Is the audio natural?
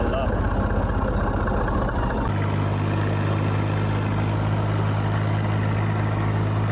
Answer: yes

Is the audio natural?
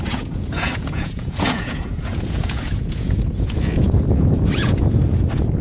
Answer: no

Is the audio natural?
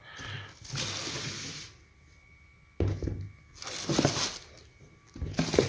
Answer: yes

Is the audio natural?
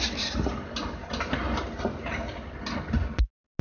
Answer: yes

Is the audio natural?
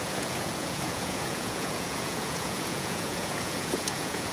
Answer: no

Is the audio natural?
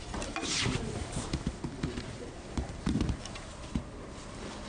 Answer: no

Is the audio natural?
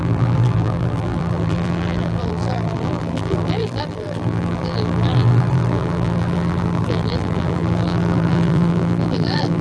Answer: no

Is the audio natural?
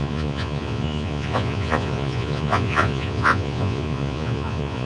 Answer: no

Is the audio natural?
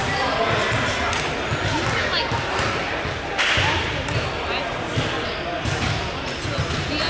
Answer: yes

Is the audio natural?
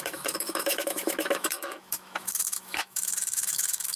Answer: no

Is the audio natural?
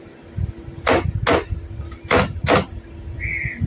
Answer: yes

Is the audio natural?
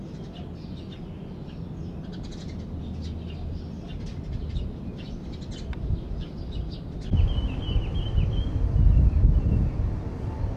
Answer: yes